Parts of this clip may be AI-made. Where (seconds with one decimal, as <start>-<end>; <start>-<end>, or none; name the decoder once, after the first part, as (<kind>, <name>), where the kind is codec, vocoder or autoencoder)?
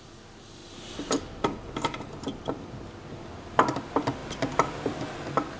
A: 0.6-2.7 (vocoder, BigVGAN v2)